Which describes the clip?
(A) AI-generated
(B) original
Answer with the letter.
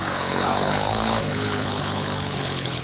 A